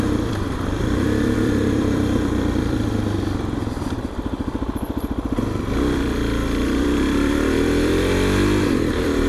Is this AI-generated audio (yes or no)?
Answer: yes